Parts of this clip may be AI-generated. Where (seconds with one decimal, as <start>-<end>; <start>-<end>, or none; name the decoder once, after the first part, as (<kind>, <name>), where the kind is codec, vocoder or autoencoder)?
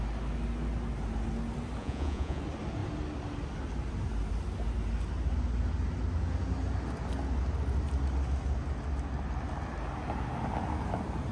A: 1.8-2.4 (vocoder, Vocos)